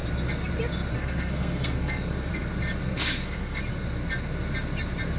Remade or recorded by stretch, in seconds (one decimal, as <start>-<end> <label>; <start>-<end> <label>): 0.0-0.9 recorded; 0.9-2.3 remade; 2.3-2.8 recorded; 2.8-3.6 remade; 3.6-5.2 recorded